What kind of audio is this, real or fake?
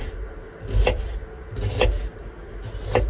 real